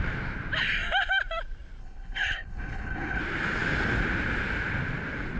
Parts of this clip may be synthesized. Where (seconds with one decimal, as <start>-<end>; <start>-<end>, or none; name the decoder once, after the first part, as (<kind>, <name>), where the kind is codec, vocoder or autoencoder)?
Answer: 1.8-3.2 (codec, HILCodec)

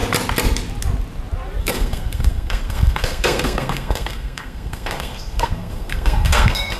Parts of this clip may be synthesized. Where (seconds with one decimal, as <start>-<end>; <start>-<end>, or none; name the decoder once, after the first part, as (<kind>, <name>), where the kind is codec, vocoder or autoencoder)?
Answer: 1.6-6.8 (codec, SNAC)